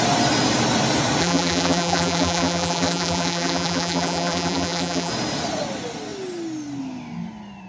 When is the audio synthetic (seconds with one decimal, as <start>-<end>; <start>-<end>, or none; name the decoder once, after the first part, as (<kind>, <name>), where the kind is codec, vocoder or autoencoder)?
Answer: 1.2-5.1 (vocoder, BigVGAN v2)